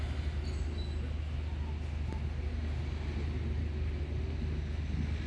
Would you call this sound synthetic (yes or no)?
no